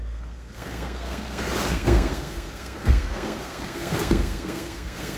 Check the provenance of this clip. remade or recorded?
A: remade